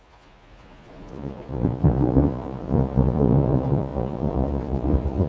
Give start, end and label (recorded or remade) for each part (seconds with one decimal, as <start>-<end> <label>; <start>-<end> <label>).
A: 0.0-5.3 remade